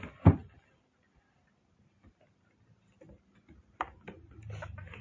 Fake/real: real